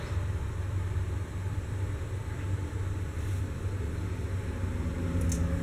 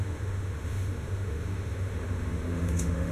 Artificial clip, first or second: second